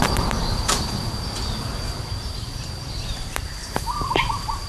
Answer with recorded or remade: remade